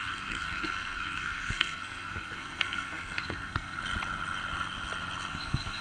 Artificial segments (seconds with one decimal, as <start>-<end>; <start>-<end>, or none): 0.0-3.8; 5.3-5.8